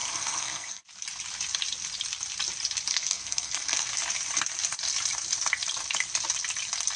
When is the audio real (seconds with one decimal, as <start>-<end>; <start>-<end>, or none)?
0.8-2.9; 3.9-7.0